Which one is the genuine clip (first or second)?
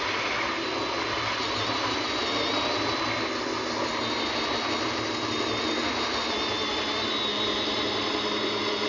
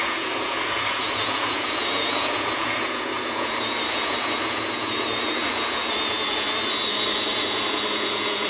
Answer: first